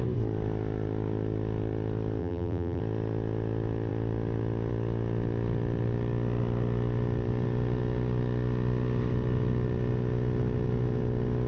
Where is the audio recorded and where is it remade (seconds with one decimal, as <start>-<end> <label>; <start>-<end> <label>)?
0.0-2.2 recorded; 2.2-2.8 remade; 2.8-11.5 recorded